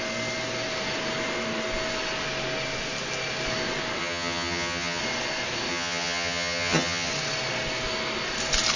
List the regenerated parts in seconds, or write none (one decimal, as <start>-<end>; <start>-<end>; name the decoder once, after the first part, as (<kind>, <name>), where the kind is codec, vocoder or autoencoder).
4.0-5.0 (vocoder, HiFi-GAN); 5.7-7.1